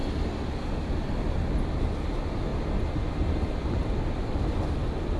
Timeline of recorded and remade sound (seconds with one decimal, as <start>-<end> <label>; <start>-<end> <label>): 0.0-5.2 recorded